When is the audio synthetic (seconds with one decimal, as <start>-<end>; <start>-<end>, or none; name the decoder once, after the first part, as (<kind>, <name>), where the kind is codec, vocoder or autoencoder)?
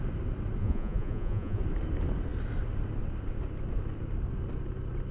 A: 0.6-1.6 (vocoder, Vocos)